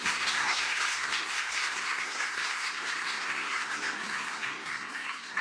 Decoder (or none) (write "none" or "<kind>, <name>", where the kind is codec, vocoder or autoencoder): codec, SNAC